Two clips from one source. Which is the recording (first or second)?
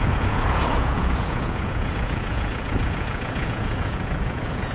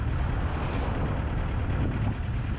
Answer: second